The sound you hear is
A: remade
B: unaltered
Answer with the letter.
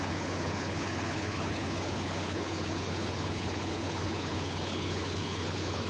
A